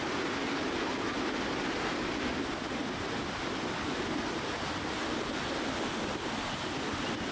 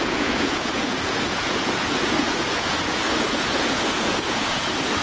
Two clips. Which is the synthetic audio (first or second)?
second